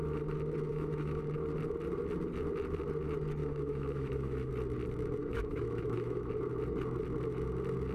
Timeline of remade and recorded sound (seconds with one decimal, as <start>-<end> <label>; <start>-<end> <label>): 0.0-0.7 recorded; 0.7-1.2 remade; 1.2-3.4 recorded; 3.4-4.5 remade; 4.5-5.2 recorded; 5.2-6.3 remade; 6.3-7.9 recorded